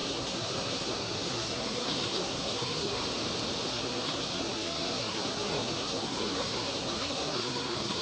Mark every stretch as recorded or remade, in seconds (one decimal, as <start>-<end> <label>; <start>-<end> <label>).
0.0-3.0 remade; 3.0-3.7 recorded; 3.7-8.0 remade